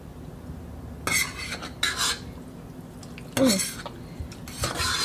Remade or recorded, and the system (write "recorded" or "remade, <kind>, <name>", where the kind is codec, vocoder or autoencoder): recorded